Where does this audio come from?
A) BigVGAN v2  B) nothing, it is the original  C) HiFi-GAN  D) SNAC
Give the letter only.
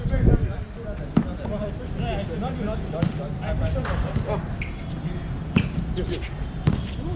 B